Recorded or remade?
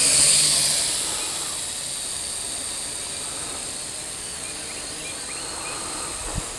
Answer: recorded